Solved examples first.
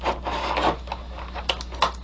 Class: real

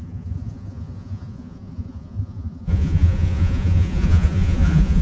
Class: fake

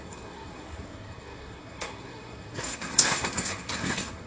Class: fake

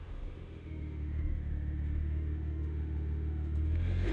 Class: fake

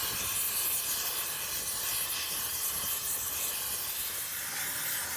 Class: real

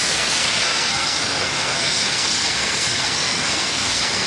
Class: fake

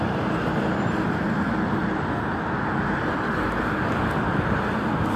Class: real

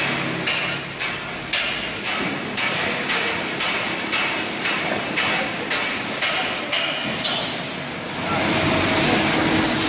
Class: real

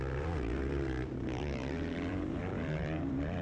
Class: fake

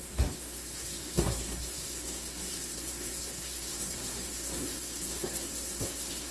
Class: fake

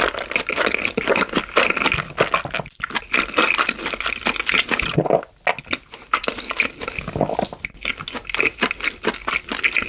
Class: real